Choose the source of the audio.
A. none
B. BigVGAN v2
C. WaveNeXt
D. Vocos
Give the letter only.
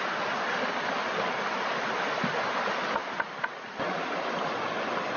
A